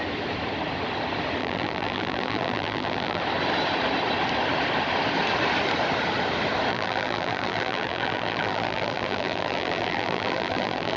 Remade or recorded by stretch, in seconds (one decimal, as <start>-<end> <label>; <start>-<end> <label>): 0.0-1.4 recorded; 1.4-3.2 remade; 3.2-6.7 recorded; 6.7-11.0 remade